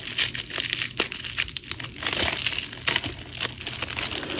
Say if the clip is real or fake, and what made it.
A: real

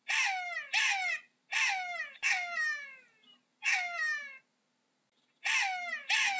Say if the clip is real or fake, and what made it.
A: real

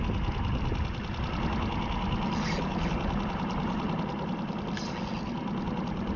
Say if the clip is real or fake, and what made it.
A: real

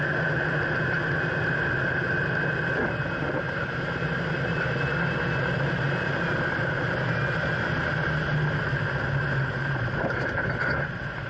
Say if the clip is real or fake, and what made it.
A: real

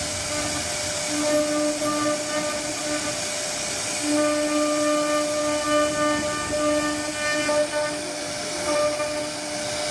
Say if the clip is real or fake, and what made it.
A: real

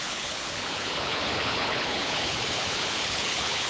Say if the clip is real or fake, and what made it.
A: fake, codec, HILCodec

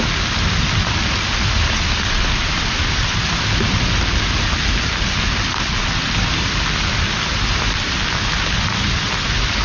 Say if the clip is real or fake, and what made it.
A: real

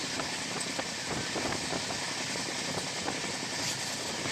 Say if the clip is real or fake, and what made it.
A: real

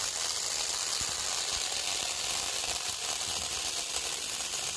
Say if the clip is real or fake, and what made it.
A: real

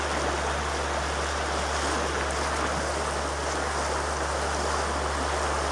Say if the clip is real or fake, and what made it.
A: real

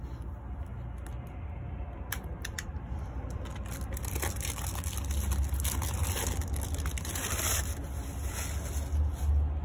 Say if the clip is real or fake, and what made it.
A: real